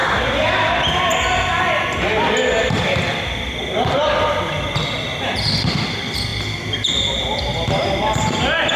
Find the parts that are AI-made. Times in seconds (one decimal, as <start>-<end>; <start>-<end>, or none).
none